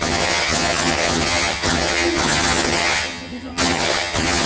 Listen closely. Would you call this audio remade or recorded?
remade